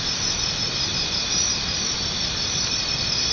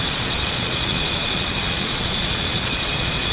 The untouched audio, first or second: first